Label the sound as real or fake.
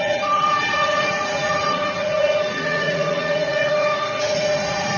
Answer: fake